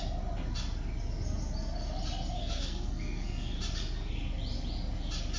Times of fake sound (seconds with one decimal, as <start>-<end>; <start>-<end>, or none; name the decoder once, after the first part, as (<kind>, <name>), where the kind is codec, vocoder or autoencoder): 2.4-3.6 (codec, SNAC)